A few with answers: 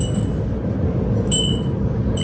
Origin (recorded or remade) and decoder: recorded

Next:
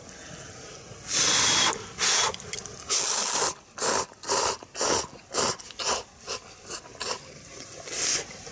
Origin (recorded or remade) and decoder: recorded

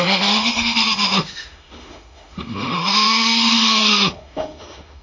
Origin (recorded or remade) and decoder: remade, autoencoder, DAC-VAE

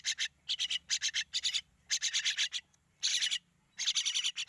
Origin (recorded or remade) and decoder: recorded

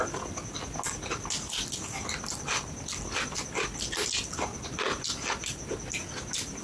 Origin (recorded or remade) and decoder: recorded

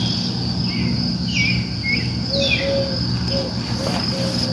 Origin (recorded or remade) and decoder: recorded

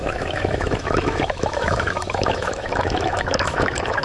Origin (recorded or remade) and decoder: remade, autoencoder, DAC-VAE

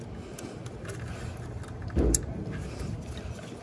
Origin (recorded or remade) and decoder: recorded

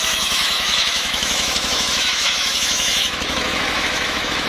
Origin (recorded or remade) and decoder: remade, autoencoder, DAC-VAE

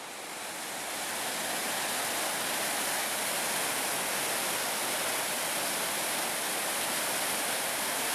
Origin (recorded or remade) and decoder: recorded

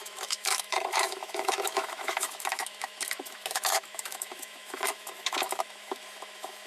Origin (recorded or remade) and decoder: remade, autoencoder, DAC-VAE